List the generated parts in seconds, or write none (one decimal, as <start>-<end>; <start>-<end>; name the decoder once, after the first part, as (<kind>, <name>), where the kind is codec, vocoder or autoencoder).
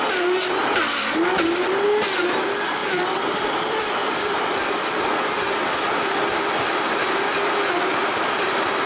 4.0-5.0 (vocoder, BigVGAN v2)